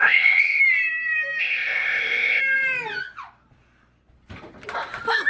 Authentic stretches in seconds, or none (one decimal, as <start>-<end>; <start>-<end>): 0.6-1.4; 2.4-5.3